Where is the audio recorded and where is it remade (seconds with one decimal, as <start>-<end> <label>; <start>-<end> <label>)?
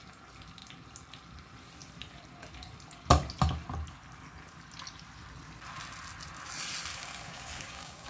0.0-6.9 recorded; 6.9-8.1 remade